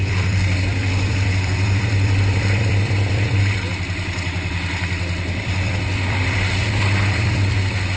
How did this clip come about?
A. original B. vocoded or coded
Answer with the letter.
B